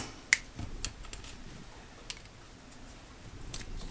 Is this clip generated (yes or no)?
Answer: no